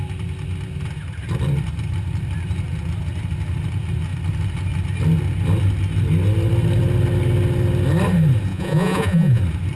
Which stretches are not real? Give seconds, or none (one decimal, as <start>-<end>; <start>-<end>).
8.5-9.4